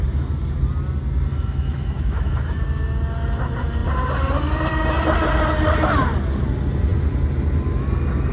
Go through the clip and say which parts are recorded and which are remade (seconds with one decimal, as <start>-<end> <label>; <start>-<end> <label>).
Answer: 0.0-1.3 recorded; 1.3-2.6 remade; 2.6-8.3 recorded